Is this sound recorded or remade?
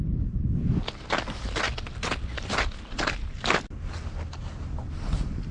recorded